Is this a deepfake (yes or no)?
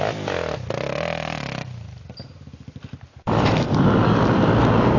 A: no